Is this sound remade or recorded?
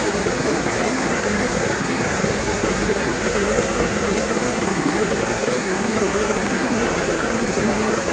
remade